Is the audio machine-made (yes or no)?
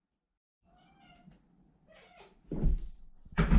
no